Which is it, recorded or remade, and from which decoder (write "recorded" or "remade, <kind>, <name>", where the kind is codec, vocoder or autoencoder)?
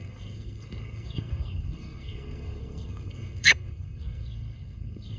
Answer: remade, codec, SNAC